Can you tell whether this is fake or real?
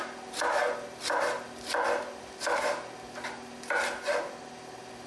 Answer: real